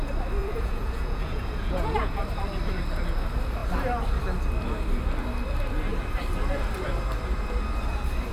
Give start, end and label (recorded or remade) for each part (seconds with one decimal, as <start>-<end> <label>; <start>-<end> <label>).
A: 0.0-0.4 recorded; 0.4-2.2 remade; 2.2-8.3 recorded